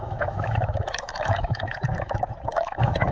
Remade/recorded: remade